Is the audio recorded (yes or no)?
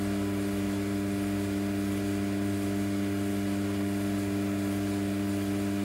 yes